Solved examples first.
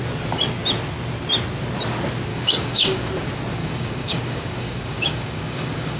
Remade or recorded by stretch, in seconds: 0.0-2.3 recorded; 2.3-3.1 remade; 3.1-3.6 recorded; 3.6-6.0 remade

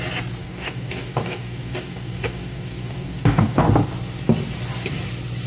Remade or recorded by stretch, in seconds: 0.0-0.4 recorded; 0.4-3.6 remade; 3.6-5.5 recorded

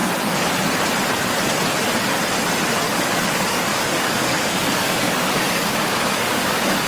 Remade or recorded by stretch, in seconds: 0.0-2.8 recorded; 2.8-6.9 remade

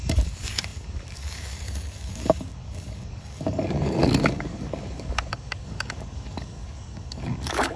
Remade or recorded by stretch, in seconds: 0.0-7.8 remade

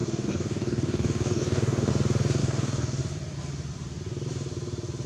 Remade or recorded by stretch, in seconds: 0.0-1.9 remade; 1.9-2.4 recorded; 2.4-3.0 remade; 3.0-5.1 recorded

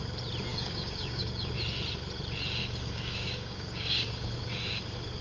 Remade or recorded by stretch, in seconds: 0.0-0.5 recorded; 0.5-1.5 remade; 1.5-2.6 recorded; 2.6-4.1 remade; 4.1-5.2 recorded

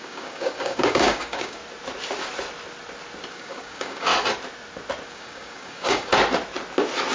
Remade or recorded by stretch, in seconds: 0.0-1.6 remade; 1.6-3.3 recorded; 3.3-4.1 remade; 4.1-5.1 recorded; 5.1-6.1 remade; 6.1-7.1 recorded

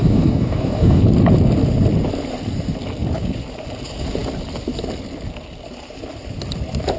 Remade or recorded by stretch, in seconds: 0.0-1.0 remade; 1.0-7.0 recorded